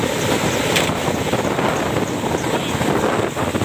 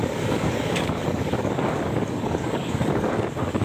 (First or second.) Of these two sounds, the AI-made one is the second